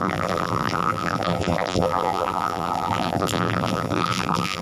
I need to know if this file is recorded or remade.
remade